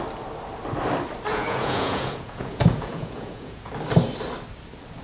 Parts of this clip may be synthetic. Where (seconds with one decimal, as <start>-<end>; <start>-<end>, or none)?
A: 1.3-3.7